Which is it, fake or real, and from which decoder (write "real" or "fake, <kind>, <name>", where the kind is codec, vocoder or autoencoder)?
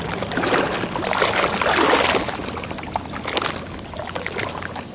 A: real